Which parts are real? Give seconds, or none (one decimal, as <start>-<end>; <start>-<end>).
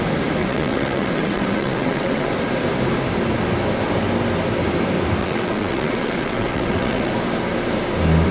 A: 0.0-0.4; 2.3-5.2; 7.1-8.3